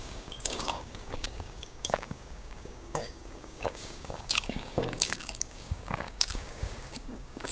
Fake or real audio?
fake